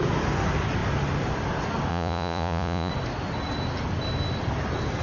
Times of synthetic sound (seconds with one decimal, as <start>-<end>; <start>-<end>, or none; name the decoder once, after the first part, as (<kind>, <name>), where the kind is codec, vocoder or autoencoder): 1.9-2.9 (vocoder, Vocos)